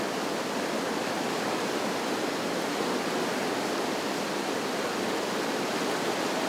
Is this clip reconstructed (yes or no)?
no